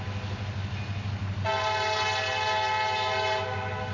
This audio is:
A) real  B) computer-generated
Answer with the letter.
A